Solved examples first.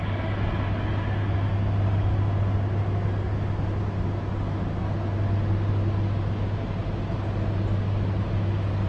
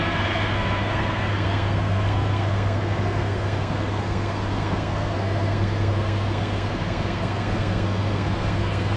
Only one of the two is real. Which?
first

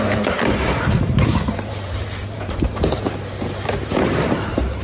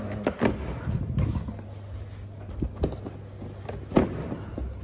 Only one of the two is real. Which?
second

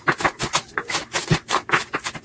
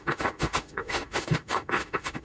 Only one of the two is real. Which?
first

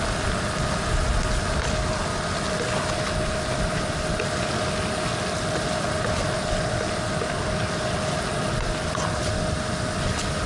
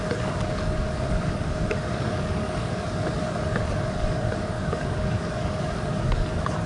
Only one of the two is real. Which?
first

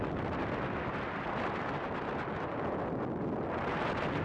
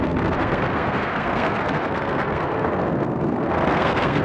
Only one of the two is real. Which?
first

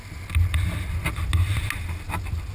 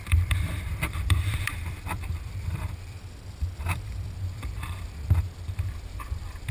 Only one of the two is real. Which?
first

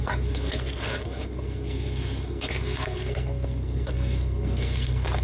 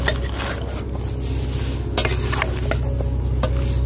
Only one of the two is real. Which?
second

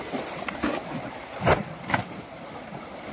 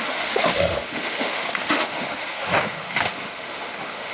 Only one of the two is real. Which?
first